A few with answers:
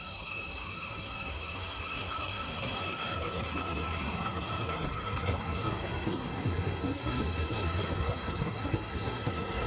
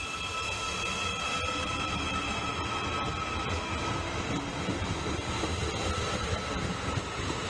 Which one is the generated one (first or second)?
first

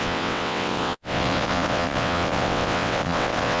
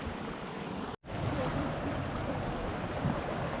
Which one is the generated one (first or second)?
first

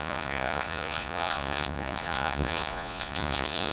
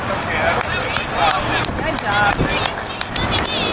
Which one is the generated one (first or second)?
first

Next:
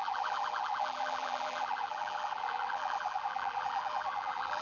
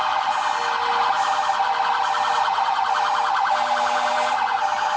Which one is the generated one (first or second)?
first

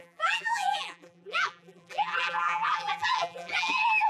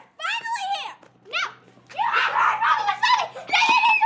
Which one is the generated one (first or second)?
first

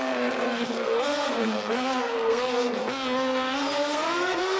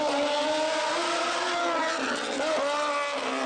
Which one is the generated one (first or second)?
first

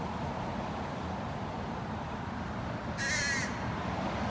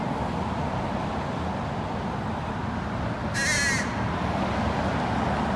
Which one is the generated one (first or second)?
first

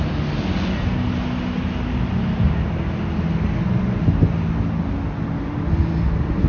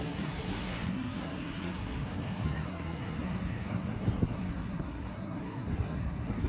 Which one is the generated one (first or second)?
second